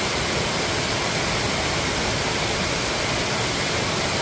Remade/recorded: recorded